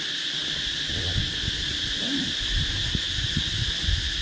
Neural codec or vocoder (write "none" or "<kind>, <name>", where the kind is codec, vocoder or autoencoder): none